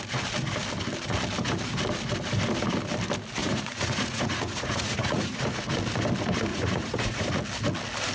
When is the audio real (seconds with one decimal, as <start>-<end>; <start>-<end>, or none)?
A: 0.0-3.4; 5.6-6.5; 7.4-8.1